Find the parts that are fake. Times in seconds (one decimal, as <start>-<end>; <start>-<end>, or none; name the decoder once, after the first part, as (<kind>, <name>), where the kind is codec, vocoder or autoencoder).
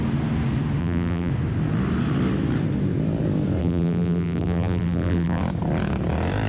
0.8-1.3 (vocoder, BigVGAN v2); 3.6-5.4